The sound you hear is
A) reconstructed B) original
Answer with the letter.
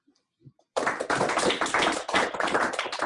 A